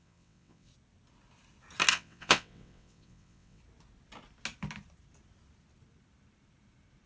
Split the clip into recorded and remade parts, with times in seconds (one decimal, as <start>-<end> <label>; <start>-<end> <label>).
0.0-0.7 remade; 0.7-1.9 recorded; 1.9-3.6 remade; 3.6-7.1 recorded